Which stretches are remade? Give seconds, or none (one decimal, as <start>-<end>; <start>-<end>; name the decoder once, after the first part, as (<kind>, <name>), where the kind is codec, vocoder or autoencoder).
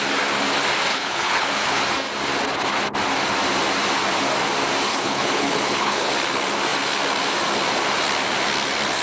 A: 0.9-1.8 (codec, HILCodec); 4.9-6.1